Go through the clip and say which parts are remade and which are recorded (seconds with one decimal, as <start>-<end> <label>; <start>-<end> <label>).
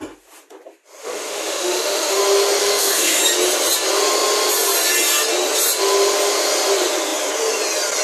0.0-1.0 recorded; 1.0-2.2 remade; 2.2-2.6 recorded; 2.6-3.2 remade; 3.2-8.0 recorded